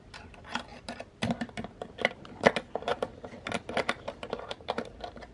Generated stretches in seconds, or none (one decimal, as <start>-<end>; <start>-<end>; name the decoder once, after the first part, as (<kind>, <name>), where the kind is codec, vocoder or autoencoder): 0.7-2.1 (vocoder, BigVGAN v2); 2.9-4.7